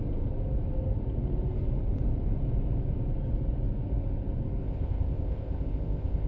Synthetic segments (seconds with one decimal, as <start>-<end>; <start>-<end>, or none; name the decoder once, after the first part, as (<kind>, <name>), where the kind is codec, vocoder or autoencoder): 4.6-6.3 (codec, ZipCodec)